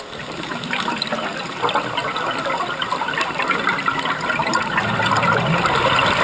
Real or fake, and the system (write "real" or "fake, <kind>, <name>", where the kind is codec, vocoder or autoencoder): real